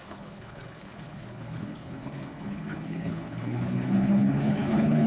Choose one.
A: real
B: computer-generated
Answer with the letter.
B